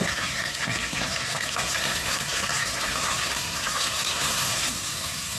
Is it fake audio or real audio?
fake